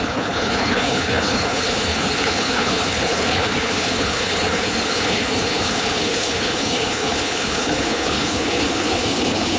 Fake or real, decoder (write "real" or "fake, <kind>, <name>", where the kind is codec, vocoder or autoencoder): fake, codec, HILCodec